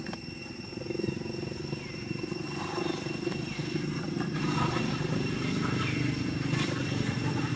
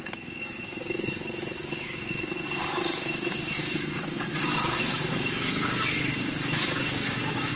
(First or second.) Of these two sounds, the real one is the first